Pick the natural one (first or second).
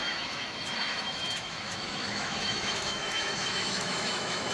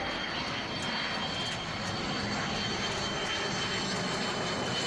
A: second